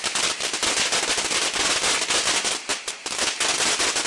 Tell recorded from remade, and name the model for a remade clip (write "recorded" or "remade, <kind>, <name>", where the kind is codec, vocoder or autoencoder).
recorded